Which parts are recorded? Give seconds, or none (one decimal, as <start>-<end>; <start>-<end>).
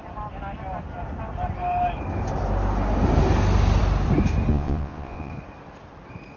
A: 0.0-4.5; 5.3-6.4